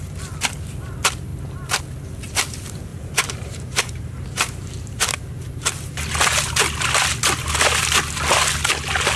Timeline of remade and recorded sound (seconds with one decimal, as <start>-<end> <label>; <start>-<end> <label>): 0.0-2.9 recorded; 2.9-5.2 remade; 5.2-9.2 recorded